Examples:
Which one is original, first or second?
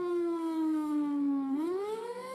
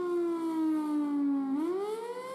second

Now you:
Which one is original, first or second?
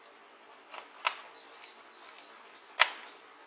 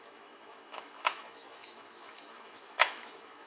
first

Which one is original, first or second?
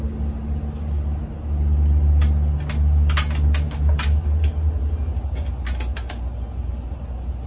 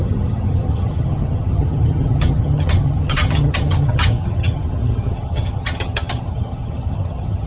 first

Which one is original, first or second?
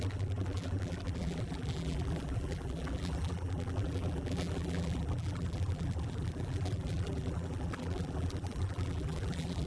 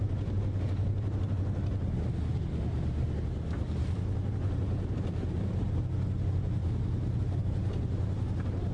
second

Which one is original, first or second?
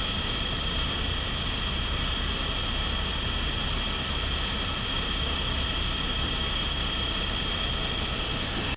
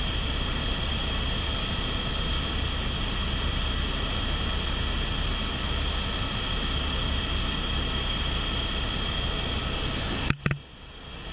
second